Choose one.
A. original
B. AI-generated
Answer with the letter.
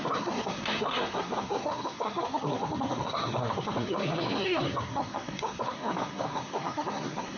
B